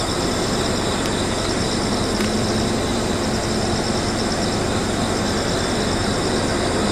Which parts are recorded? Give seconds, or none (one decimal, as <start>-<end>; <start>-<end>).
0.0-2.9; 3.4-6.9